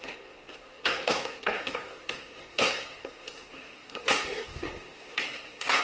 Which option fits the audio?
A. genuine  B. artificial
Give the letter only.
B